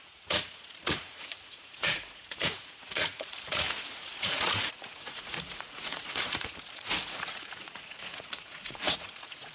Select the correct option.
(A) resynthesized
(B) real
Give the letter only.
A